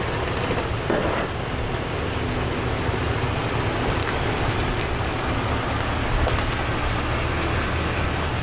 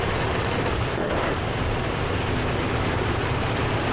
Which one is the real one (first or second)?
first